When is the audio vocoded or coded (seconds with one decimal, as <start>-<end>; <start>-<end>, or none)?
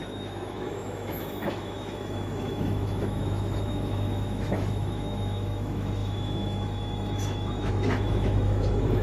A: 0.0-9.0